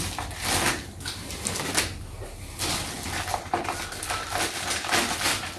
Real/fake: real